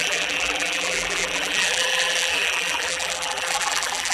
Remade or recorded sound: remade